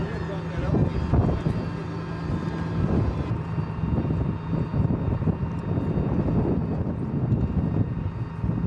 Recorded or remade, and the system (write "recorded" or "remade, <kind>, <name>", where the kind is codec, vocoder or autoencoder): recorded